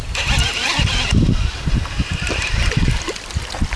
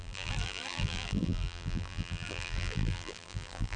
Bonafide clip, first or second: first